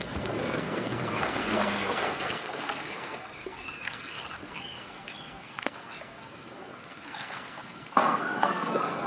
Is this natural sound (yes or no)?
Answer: no